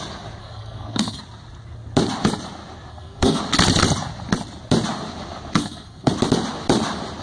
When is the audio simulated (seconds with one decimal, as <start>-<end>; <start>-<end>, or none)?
0.4-1.2; 2.9-3.4; 5.6-6.1